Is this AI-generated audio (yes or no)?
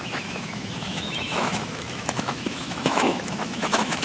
yes